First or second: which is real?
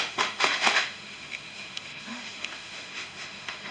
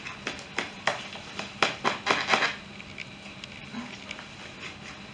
second